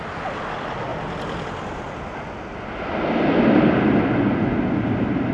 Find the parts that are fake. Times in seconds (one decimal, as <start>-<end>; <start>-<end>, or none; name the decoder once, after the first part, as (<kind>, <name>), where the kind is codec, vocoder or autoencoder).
0.9-3.4 (vocoder, BigVGAN v2)